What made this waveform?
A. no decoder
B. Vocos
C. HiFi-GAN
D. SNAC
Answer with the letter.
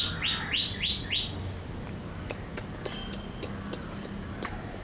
A